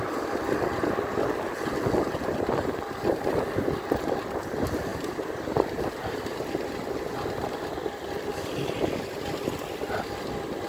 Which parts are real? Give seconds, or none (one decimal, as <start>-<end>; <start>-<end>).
0.0-4.9; 6.3-10.7